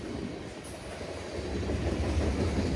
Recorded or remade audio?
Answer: recorded